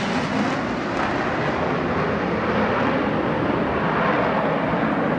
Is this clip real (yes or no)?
yes